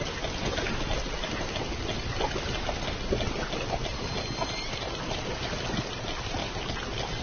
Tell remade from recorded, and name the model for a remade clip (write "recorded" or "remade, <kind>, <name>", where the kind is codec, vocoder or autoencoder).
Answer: recorded